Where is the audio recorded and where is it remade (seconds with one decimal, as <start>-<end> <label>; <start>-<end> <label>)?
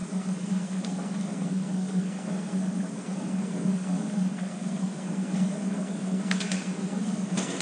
0.0-7.6 remade